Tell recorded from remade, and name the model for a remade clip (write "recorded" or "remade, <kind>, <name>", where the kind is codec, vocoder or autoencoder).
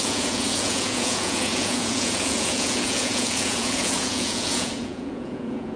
remade, vocoder, Vocos